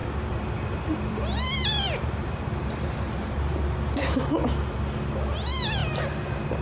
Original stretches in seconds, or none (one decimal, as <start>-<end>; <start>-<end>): 4.0-5.8